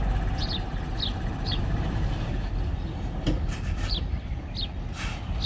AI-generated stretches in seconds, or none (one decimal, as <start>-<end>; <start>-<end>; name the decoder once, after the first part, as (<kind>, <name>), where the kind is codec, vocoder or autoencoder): 1.1-4.2 (vocoder, BigVGAN v2)

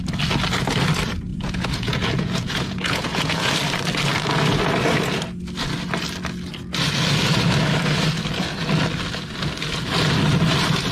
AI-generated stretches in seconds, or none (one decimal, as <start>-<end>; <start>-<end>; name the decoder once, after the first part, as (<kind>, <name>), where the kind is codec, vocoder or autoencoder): 1.3-3.5 (vocoder, Vocos)

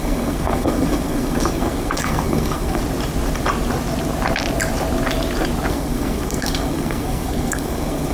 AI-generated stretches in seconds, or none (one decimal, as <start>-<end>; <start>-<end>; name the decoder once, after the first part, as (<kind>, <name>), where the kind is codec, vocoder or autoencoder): 0.0-2.8 (codec, SNAC); 5.7-8.1

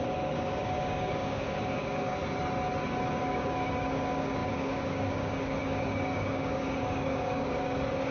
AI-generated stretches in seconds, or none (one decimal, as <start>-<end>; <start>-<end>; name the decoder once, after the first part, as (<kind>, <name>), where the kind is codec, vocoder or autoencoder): 0.0-2.2 (codec, DAC); 3.2-8.1

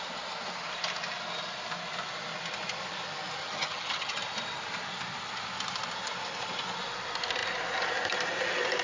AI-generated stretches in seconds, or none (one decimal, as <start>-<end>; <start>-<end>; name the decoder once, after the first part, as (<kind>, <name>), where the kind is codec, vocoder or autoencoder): 3.4-4.2 (vocoder, HiFi-GAN)

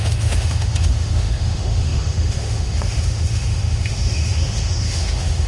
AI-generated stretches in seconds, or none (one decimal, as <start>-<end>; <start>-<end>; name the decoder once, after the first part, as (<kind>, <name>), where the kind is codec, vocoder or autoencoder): 0.0-5.5 (autoencoder, DAC-VAE)

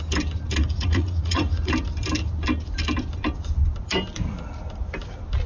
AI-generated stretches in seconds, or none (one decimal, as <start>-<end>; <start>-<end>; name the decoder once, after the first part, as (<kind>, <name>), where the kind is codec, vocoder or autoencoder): 0.6-1.7 (vocoder, Vocos)

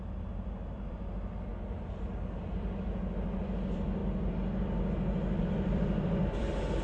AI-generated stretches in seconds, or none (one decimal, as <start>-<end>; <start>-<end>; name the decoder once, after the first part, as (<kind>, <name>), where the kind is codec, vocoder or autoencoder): 0.0-1.5 (vocoder, BigVGAN v2); 2.0-4.0; 5.4-6.8